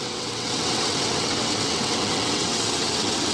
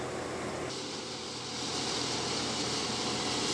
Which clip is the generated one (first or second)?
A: first